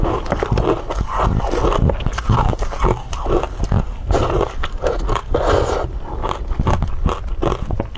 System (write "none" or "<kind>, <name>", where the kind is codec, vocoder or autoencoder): none